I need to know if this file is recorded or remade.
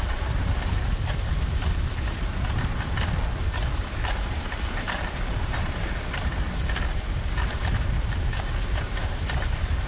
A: remade